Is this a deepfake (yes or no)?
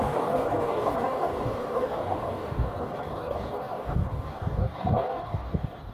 yes